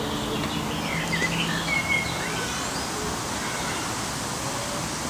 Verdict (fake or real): real